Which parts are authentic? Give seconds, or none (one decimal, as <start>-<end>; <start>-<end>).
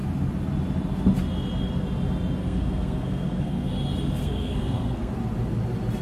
0.0-2.4; 3.7-4.2; 5.1-6.0